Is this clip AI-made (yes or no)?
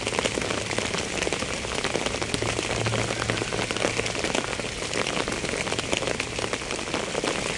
no